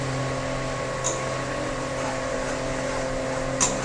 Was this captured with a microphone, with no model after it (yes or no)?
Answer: yes